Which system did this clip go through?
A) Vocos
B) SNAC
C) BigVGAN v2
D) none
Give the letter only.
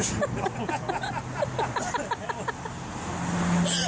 D